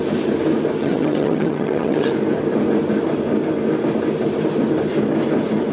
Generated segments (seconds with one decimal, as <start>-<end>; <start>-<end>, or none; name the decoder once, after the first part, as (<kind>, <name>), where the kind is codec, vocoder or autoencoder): 0.8-2.1 (vocoder, HiFi-GAN)